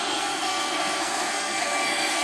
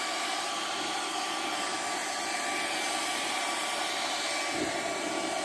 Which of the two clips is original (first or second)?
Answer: second